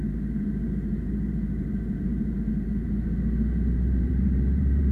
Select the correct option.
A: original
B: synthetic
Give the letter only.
B